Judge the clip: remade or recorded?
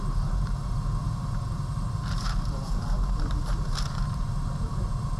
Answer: remade